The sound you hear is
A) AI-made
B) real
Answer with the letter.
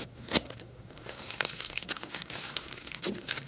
A